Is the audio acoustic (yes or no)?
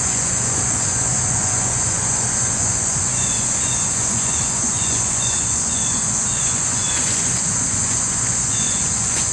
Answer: no